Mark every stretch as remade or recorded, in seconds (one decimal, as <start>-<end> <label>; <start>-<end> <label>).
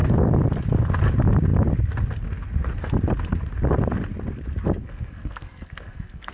0.0-4.8 recorded; 4.8-6.3 remade